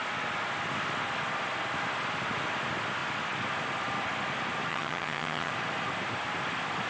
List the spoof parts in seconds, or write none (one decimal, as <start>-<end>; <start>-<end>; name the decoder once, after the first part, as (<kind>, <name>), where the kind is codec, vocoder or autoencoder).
4.7-5.5 (vocoder, HiFi-GAN)